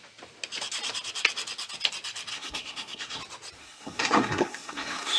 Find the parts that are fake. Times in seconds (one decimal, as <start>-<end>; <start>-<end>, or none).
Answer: 2.3-3.2; 3.6-5.2